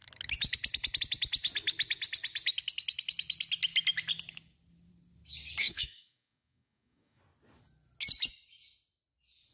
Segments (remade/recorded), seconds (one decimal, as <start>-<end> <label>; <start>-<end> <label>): 0.0-5.6 recorded; 5.6-7.2 remade; 7.2-9.5 recorded